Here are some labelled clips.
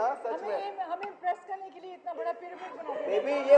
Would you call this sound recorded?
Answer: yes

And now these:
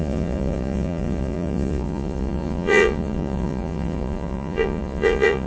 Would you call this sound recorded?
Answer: no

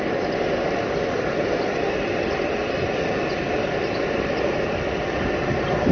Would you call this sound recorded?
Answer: yes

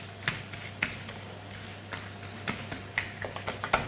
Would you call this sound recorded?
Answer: yes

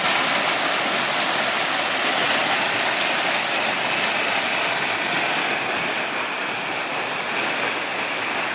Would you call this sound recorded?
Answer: yes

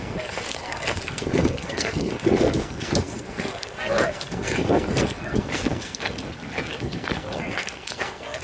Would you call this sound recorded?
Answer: no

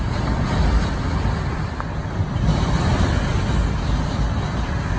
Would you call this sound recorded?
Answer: yes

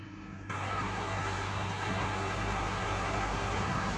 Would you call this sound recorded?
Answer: no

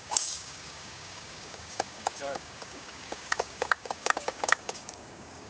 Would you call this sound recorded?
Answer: no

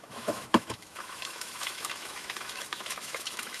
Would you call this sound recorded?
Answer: no